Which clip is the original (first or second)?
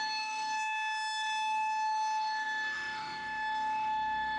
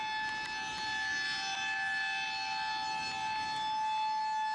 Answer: second